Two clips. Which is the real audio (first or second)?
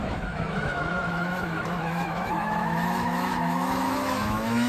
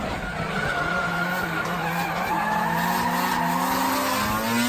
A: second